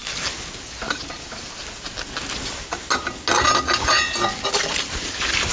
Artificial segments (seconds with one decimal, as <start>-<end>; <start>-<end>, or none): 0.9-1.6; 4.9-5.5